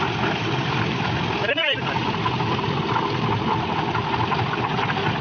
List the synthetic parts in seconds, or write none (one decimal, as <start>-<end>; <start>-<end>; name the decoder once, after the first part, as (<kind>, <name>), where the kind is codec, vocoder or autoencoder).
0.0-1.6 (vocoder, BigVGAN v2); 3.3-5.2

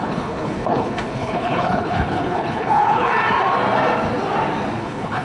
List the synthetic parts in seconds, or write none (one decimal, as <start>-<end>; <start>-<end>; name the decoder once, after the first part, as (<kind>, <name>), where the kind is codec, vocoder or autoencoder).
0.0-3.1 (codec, HILCodec); 4.8-5.2

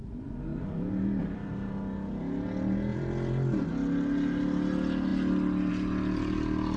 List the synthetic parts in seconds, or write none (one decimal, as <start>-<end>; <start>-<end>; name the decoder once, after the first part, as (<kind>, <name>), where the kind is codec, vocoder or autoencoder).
0.5-1.5 (vocoder, BigVGAN v2); 2.9-3.7

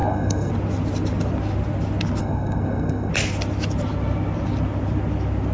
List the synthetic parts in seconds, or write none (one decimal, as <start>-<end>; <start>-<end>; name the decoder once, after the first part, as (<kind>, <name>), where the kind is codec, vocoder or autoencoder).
0.0-0.5 (codec, SNAC); 2.2-3.1